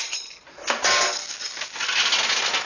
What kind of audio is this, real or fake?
real